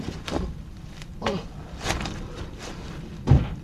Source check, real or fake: fake